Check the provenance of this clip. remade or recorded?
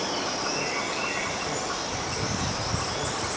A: recorded